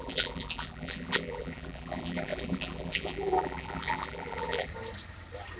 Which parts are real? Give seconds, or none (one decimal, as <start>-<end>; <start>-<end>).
4.7-5.6